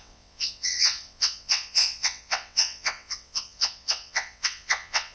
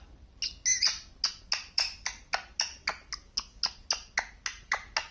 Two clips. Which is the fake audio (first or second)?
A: first